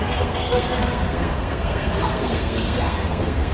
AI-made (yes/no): yes